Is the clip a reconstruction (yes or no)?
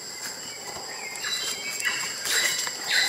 no